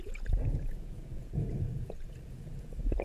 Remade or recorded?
remade